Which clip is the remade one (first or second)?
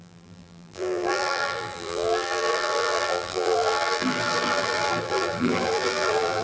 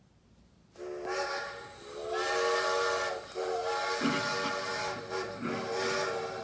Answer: first